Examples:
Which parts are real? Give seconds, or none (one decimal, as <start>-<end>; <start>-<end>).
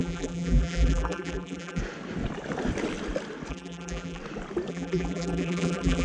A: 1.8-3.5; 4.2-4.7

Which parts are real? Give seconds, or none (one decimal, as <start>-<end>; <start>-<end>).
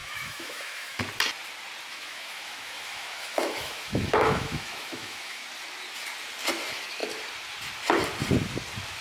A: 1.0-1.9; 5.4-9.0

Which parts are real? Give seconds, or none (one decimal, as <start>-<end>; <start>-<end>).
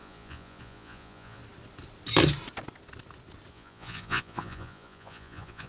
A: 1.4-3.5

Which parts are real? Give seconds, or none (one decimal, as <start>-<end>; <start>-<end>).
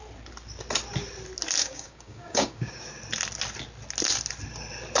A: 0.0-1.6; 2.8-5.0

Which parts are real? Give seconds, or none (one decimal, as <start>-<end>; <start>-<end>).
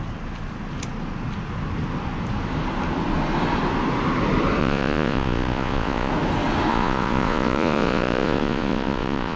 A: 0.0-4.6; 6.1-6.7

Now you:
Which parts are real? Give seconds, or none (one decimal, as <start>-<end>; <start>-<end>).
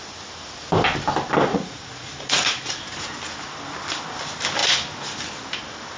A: 0.0-1.5; 3.0-6.0